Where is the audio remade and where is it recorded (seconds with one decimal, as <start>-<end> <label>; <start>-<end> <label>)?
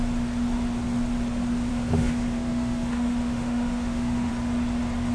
0.0-1.7 recorded; 1.7-4.3 remade; 4.3-5.1 recorded